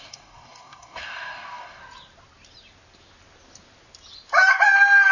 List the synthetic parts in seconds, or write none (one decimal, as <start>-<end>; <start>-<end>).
0.0-1.8